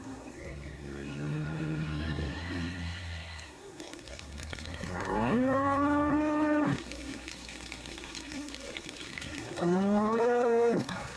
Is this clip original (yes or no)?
no